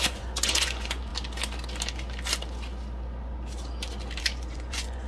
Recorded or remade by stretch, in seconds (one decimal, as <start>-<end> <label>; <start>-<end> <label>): 0.0-1.1 remade; 1.1-4.2 recorded; 4.2-5.1 remade